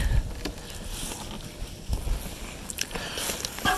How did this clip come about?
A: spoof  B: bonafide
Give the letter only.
B